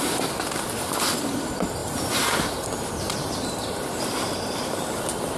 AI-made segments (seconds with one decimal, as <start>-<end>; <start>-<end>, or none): 1.8-5.0